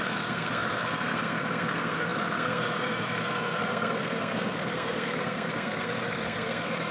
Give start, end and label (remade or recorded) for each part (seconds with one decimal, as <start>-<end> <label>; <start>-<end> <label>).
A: 0.0-6.9 remade

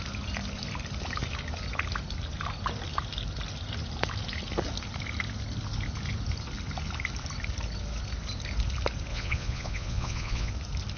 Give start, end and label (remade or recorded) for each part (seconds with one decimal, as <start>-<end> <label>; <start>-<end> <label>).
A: 0.0-9.1 recorded; 9.1-10.5 remade; 10.5-11.0 recorded

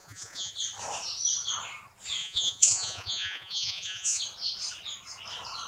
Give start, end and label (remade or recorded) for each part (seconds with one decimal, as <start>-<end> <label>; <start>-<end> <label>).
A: 0.0-0.5 remade; 0.5-2.2 recorded; 2.2-4.2 remade; 4.2-5.7 recorded

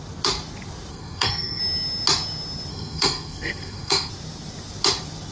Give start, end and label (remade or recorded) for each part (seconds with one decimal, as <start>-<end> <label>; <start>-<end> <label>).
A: 0.0-0.9 recorded; 0.9-1.6 remade; 1.6-2.7 recorded; 2.7-4.1 remade; 4.1-5.3 recorded